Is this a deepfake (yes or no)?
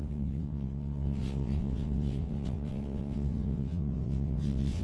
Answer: yes